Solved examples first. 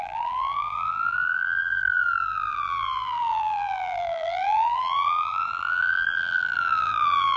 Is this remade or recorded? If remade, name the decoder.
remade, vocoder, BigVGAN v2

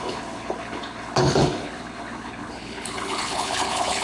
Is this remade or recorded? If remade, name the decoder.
remade, codec, HILCodec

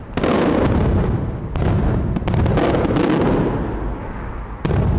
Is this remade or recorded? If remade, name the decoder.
recorded